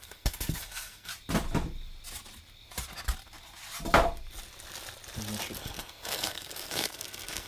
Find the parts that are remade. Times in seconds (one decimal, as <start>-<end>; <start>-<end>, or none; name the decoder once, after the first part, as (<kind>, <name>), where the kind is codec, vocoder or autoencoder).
0.0-1.1 (codec, SNAC); 5.6-7.5